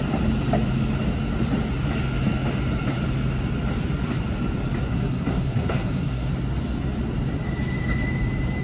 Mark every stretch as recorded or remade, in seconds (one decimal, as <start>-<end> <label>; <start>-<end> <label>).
0.0-4.9 recorded; 4.9-6.3 remade; 6.3-8.6 recorded

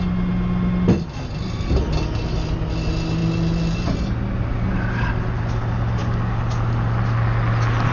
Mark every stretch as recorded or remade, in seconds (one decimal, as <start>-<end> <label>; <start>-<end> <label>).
0.0-7.9 recorded